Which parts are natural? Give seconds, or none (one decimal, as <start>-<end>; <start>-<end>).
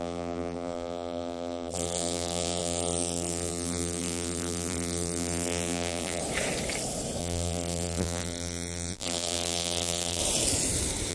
6.2-7.2; 10.2-11.1